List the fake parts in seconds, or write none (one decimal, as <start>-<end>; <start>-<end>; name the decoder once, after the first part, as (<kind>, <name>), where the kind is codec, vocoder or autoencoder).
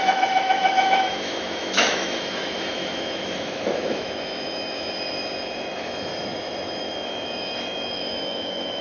0.0-8.8 (autoencoder, DAC-VAE)